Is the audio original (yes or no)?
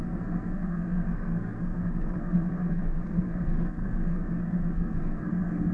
no